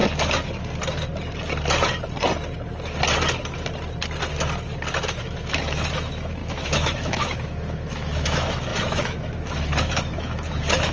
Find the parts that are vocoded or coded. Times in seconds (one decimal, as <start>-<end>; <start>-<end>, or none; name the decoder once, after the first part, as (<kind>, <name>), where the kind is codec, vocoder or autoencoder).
5.2-10.9 (autoencoder, DAC-VAE)